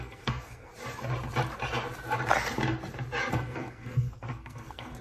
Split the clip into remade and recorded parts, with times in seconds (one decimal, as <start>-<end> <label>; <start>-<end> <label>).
0.0-0.7 remade; 0.7-3.3 recorded; 3.3-5.0 remade